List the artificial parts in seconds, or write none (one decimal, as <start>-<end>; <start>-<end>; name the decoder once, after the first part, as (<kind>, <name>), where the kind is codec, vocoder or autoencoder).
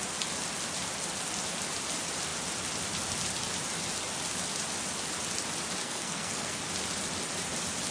5.8-6.6 (codec, SNAC)